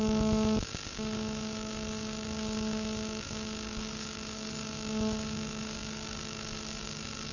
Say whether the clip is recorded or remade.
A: remade